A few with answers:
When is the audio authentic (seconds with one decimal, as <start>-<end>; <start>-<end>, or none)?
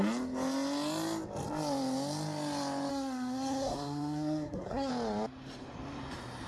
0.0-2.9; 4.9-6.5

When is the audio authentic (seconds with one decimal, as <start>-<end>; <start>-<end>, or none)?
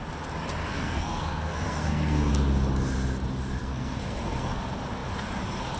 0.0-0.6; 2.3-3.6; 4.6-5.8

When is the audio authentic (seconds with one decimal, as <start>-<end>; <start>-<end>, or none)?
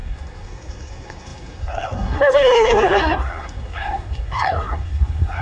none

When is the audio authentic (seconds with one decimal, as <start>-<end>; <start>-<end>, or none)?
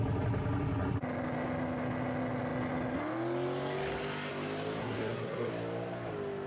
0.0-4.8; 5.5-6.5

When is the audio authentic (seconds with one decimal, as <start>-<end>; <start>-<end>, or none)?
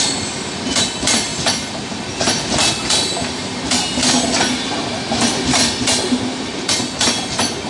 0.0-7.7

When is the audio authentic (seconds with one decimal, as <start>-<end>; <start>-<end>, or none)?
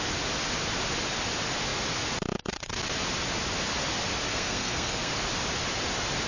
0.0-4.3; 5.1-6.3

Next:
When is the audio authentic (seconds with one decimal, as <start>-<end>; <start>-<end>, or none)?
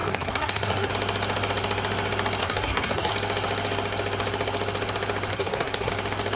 0.9-2.4; 3.1-5.3; 5.9-6.4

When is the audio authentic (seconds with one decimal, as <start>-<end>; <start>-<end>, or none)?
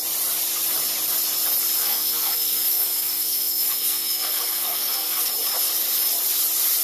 0.0-1.8; 5.3-6.8